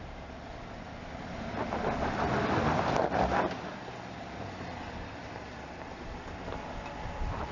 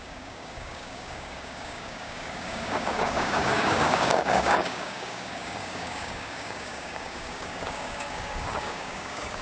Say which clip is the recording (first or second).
first